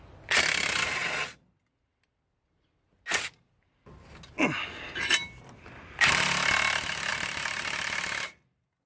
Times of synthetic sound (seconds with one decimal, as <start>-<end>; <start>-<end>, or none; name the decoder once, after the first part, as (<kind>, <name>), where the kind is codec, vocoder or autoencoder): 7.1-8.9 (vocoder, BigVGAN v2)